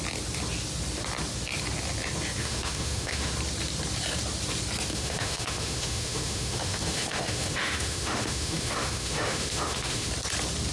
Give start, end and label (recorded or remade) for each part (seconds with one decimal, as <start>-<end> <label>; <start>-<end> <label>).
0.0-2.4 recorded; 2.4-3.3 remade; 3.3-4.9 recorded; 4.9-10.1 remade; 10.1-10.7 recorded